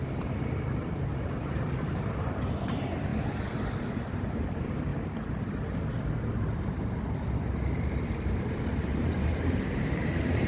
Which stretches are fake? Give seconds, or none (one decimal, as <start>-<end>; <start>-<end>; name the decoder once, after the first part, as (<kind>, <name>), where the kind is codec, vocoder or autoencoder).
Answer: 0.0-3.1 (vocoder, BigVGAN v2); 3.9-4.9; 8.0-10.5